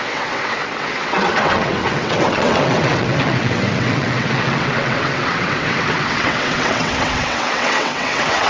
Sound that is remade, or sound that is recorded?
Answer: remade